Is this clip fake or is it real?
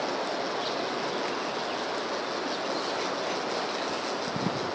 real